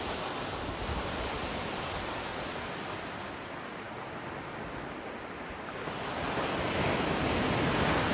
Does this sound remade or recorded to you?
recorded